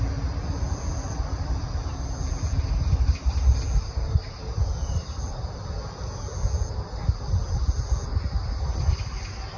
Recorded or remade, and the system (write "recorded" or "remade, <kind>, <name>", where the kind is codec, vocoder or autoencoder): recorded